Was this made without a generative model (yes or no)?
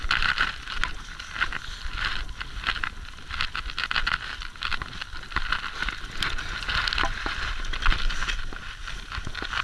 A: yes